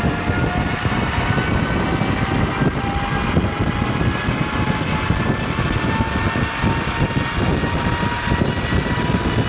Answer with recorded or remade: recorded